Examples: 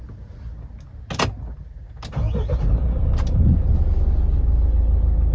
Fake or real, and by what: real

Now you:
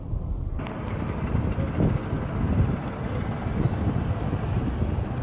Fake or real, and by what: real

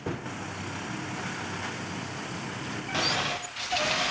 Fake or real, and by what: real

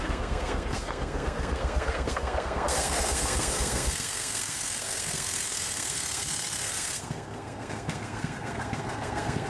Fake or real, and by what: fake, codec, SNAC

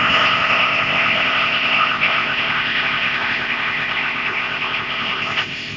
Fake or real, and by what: fake, codec, ZipCodec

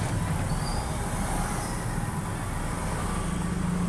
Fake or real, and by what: real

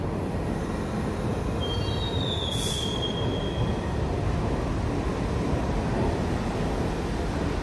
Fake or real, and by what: real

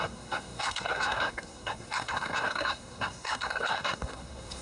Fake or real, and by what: fake, codec, SNAC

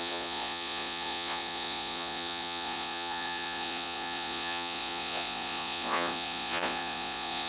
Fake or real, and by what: fake, vocoder, Vocos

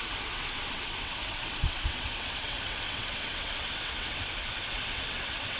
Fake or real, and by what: fake, vocoder, WaveNeXt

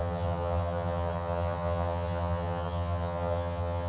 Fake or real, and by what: fake, vocoder, HiFi-GAN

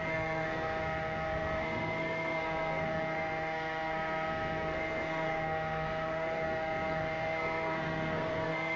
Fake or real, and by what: fake, codec, SNAC